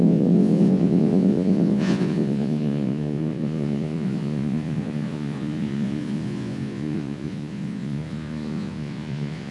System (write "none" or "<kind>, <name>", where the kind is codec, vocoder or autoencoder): vocoder, Vocos